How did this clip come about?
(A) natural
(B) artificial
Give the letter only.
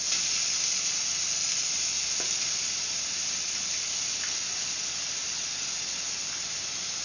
A